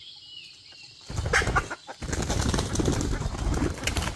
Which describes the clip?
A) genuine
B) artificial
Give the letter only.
B